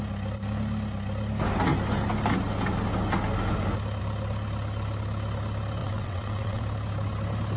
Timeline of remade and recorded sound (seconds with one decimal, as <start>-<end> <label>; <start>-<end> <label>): 0.0-5.8 recorded; 5.8-6.6 remade; 6.6-7.6 recorded